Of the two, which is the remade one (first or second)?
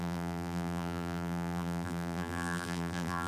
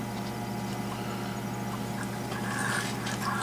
first